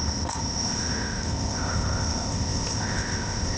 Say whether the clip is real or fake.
fake